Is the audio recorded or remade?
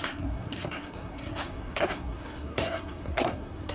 remade